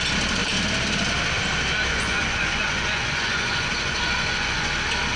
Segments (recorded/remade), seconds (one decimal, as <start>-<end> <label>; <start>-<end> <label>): 0.0-1.9 recorded; 1.9-4.7 remade; 4.7-5.2 recorded